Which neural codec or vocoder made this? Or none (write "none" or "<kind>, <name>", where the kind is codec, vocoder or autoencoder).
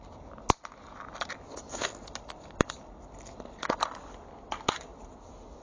none